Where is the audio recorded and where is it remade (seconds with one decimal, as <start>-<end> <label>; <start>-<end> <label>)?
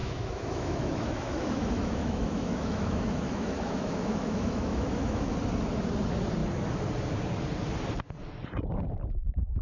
0.0-5.3 remade; 5.3-9.6 recorded